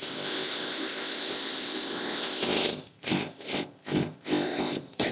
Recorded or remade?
remade